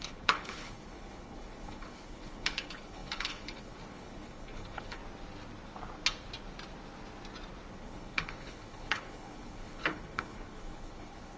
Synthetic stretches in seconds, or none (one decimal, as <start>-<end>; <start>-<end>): 0.0-5.0; 7.7-11.4